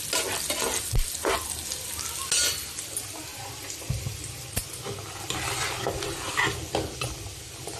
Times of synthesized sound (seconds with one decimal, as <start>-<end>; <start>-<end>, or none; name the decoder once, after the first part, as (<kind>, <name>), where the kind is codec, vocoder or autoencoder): none